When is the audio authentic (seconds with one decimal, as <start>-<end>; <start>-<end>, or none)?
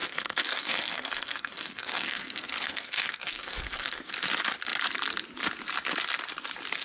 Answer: 4.1-6.8